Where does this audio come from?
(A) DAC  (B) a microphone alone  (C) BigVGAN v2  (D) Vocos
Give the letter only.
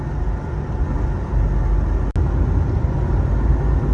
B